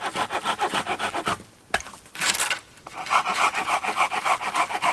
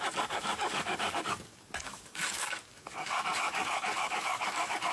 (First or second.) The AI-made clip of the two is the second